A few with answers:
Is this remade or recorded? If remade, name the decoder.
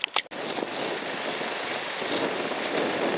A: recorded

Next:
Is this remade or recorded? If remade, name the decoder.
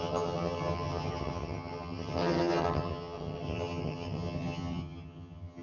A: remade, vocoder, HiFi-GAN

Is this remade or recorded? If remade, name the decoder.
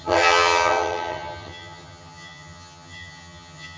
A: remade, vocoder, HiFi-GAN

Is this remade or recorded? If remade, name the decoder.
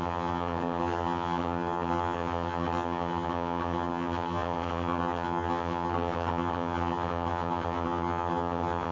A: remade, vocoder, HiFi-GAN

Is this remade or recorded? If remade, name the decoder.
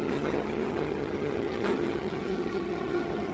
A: remade, vocoder, HiFi-GAN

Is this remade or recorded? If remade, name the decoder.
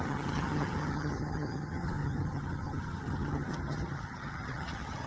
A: remade, vocoder, HiFi-GAN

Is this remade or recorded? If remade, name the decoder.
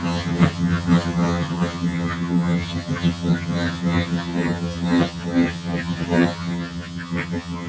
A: remade, vocoder, HiFi-GAN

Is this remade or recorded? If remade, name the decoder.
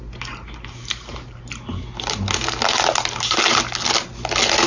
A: recorded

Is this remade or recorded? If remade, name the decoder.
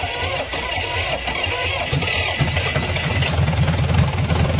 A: recorded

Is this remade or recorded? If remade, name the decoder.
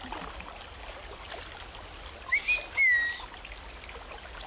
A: recorded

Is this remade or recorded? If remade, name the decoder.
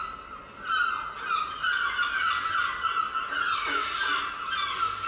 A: recorded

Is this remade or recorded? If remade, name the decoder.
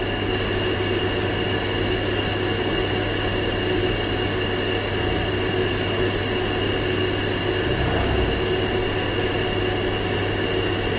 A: recorded